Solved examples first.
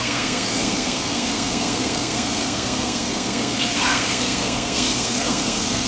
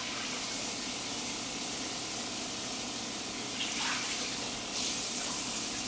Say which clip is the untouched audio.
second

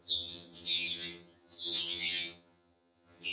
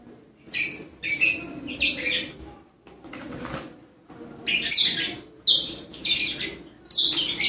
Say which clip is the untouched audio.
second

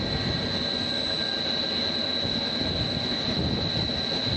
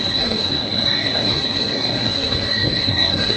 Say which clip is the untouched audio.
first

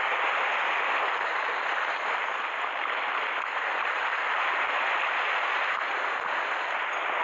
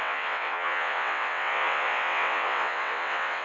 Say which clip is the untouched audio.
first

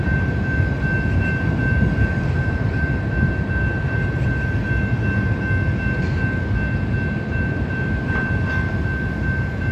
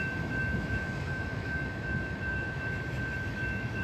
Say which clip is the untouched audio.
first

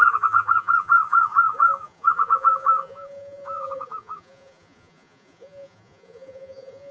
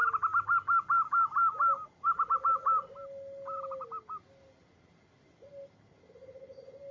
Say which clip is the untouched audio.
second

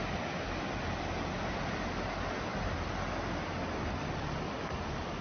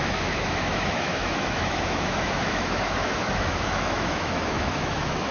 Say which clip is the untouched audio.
first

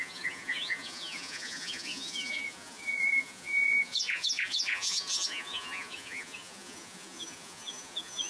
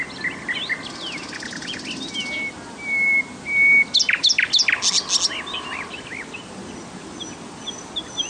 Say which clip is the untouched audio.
second